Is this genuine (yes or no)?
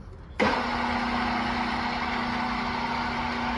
yes